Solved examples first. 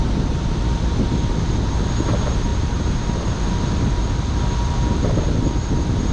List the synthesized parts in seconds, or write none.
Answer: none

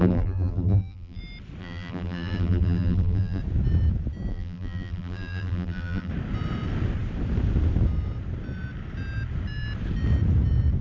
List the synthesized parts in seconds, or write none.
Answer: 0.0-1.2 (vocoder, BigVGAN v2); 1.6-3.4; 4.3-6.1

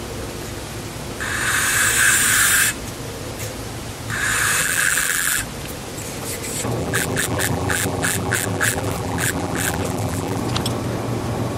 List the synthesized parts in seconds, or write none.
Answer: 4.6-5.4 (vocoder, BigVGAN v2); 6.8-10.4

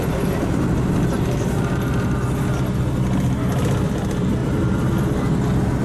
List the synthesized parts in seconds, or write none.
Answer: 4.4-4.9 (vocoder, BigVGAN v2)